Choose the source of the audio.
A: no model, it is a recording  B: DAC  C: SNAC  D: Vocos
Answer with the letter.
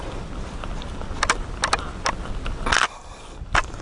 A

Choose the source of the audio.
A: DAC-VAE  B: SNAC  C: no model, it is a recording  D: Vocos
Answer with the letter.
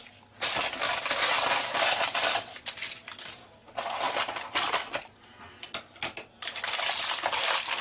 C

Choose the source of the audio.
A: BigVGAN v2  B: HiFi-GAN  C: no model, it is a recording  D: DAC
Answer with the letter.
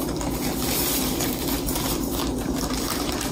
A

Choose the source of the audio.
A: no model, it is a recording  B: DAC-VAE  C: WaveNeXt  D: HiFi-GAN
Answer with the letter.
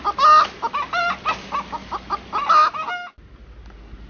A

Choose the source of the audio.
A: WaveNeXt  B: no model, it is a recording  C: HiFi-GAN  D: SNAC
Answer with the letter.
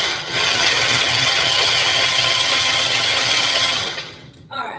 C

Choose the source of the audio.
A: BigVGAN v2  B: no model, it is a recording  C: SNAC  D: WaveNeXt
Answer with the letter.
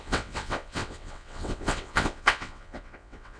D